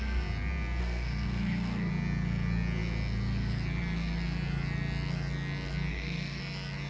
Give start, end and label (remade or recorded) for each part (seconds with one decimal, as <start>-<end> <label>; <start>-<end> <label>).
0.0-0.8 recorded; 0.8-1.9 remade; 1.9-5.9 recorded; 5.9-6.4 remade; 6.4-6.9 recorded